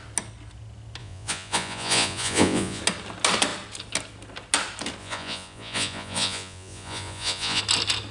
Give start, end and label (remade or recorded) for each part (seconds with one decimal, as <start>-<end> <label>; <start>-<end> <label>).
0.0-1.0 recorded; 1.0-2.8 remade; 2.8-5.0 recorded; 5.0-7.6 remade; 7.6-8.1 recorded